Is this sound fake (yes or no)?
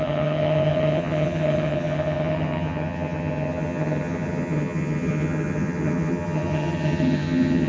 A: yes